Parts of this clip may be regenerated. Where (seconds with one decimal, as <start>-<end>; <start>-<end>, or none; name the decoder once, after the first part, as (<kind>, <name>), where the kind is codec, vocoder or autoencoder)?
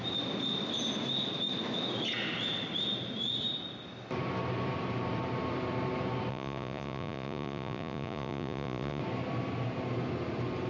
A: 6.3-9.0 (vocoder, Vocos)